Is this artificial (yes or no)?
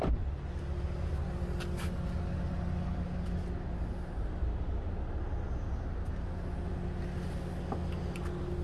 no